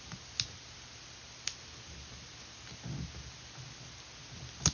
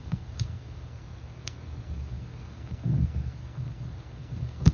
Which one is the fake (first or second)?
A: second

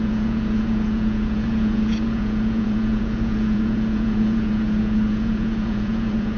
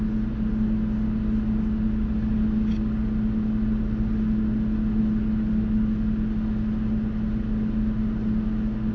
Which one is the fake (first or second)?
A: first